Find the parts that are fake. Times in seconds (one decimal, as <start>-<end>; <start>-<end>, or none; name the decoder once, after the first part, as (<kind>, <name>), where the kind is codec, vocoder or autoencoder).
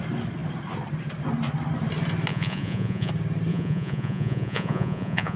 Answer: 2.3-3.1 (vocoder, Vocos); 3.5-5.4